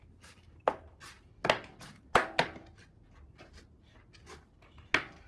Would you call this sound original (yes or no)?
yes